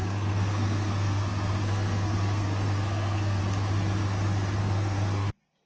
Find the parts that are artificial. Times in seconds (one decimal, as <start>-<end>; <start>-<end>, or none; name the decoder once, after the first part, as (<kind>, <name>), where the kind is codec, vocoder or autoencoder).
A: 0.0-3.4 (codec, SNAC); 4.6-5.3